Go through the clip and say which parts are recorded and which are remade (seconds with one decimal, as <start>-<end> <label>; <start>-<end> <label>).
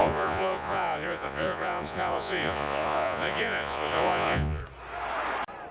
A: 0.0-4.6 remade; 4.6-5.7 recorded